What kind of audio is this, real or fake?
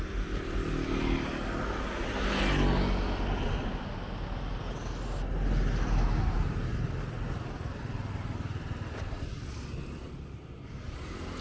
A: real